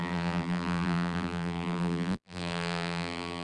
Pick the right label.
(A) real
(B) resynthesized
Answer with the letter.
B